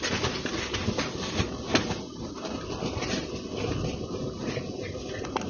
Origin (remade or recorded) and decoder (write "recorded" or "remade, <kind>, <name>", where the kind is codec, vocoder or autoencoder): recorded